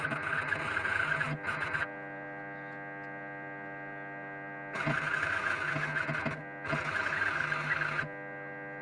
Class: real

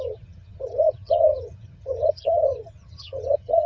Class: fake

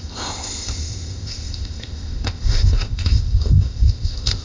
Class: fake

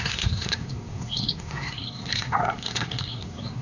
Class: fake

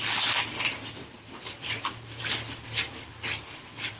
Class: real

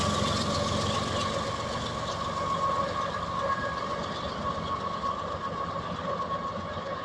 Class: real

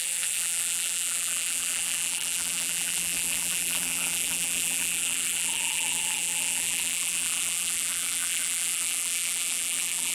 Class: fake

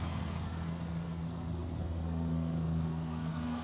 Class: fake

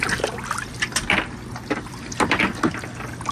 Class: real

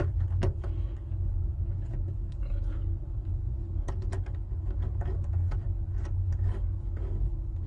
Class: fake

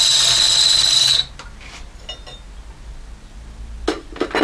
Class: real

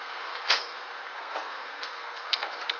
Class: fake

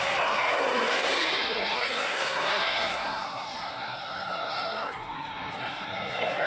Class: fake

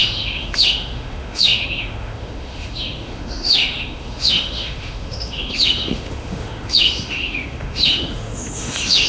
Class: fake